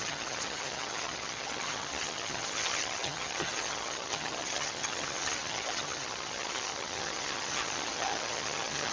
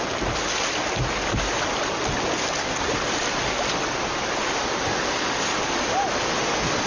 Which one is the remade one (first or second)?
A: first